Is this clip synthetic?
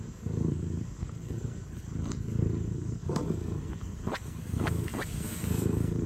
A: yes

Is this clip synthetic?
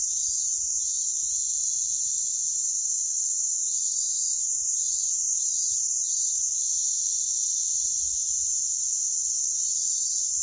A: no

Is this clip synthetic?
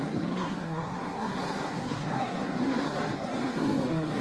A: yes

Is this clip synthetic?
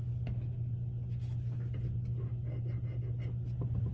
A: no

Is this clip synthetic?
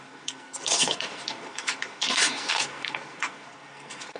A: yes